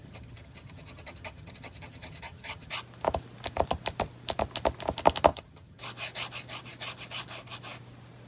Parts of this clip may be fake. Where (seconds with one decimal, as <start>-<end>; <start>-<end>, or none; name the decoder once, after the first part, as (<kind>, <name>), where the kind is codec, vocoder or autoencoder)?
0.0-2.7 (vocoder, HiFi-GAN); 5.3-5.8